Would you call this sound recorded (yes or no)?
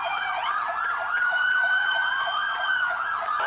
no